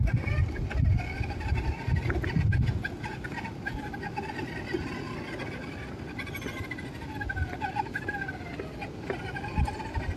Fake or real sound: real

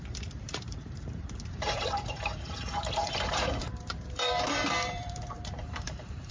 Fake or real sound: fake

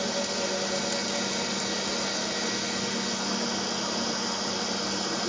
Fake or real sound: real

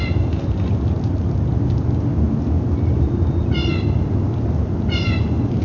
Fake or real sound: real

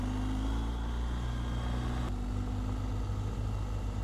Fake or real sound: real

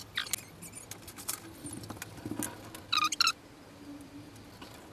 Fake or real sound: real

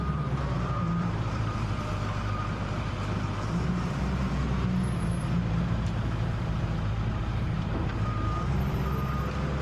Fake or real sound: fake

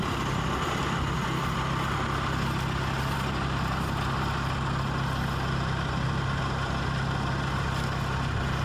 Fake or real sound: real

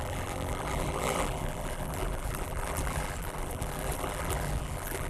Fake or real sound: fake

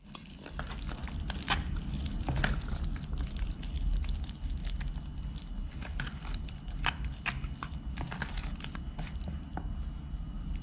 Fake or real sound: fake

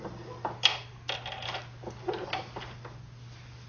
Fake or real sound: real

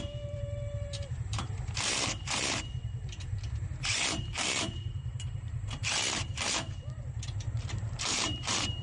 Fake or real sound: fake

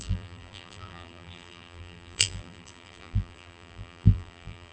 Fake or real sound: fake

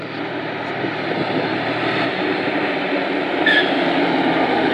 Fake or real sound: fake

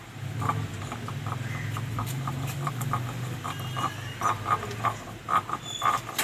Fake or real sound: fake